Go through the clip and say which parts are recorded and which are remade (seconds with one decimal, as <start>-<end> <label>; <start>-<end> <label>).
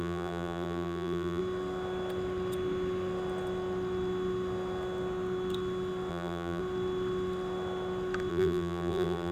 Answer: 0.0-1.4 remade; 1.4-6.1 recorded; 6.1-6.6 remade; 6.6-8.3 recorded; 8.3-9.3 remade